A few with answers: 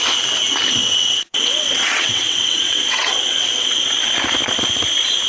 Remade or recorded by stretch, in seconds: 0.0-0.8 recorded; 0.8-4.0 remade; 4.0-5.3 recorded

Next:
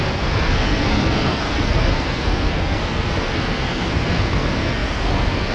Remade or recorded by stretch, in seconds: 0.0-5.5 remade